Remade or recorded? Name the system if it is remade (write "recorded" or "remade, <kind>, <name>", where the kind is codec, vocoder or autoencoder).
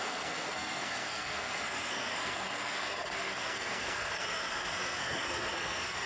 remade, codec, SNAC